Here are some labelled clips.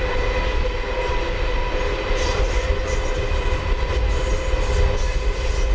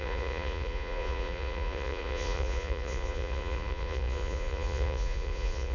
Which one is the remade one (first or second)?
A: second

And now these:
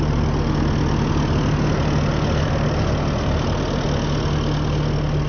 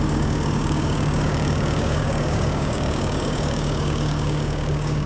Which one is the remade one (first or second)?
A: second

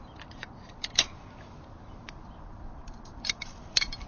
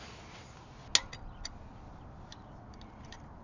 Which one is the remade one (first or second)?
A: first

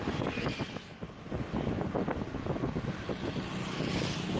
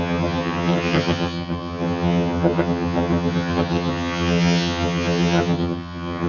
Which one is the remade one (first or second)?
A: second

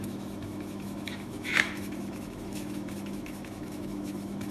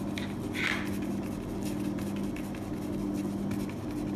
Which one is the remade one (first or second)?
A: first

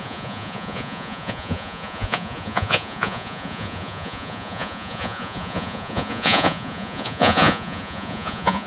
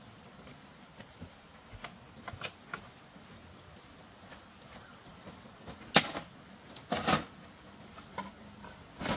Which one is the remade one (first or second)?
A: first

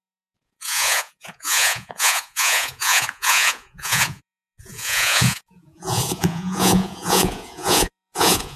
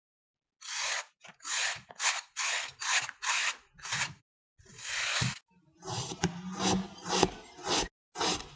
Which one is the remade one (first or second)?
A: first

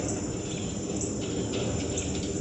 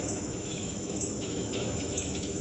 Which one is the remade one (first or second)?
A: second